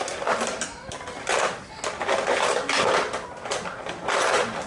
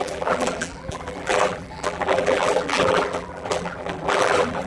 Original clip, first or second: first